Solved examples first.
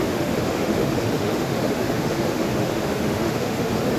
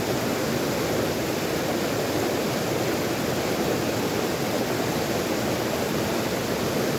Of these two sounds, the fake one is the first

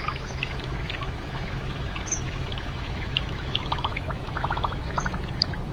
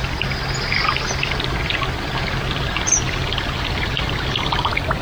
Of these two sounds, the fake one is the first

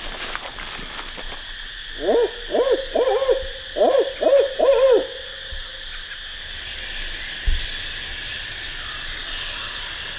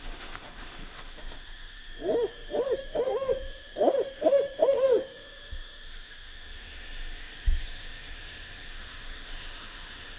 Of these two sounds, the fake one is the second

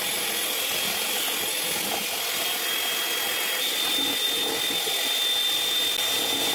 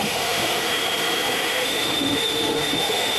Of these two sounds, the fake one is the second